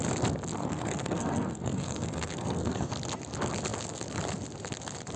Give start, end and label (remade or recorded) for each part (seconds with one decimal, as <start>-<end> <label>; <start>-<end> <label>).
0.0-0.6 recorded; 0.6-2.9 remade; 2.9-5.2 recorded